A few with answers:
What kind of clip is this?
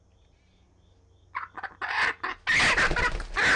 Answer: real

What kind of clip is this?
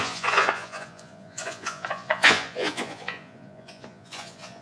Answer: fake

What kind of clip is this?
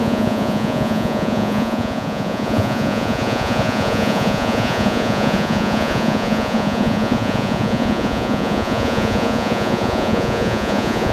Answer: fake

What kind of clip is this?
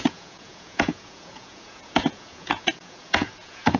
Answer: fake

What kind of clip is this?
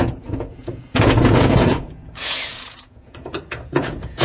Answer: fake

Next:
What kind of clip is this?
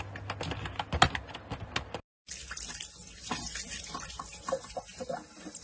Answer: real